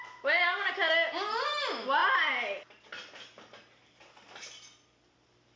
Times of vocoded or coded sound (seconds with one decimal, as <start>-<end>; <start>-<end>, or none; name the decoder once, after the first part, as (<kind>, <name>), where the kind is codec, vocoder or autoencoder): none